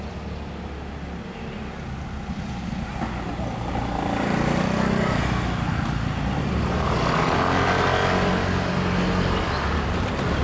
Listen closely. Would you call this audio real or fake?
real